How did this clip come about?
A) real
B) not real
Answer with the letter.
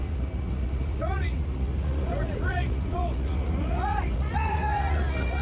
B